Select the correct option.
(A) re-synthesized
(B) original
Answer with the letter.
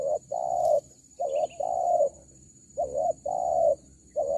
A